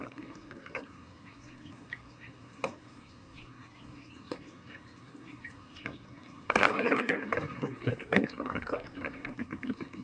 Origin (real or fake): fake